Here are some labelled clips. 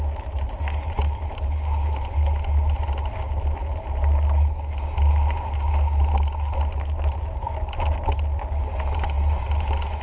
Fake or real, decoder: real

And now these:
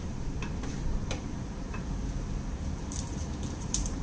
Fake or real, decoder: fake, vocoder, BigVGAN v2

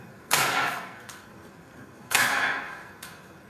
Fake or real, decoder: fake, codec, SNAC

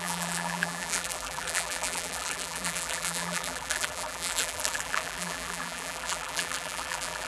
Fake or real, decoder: fake, vocoder, BigVGAN v2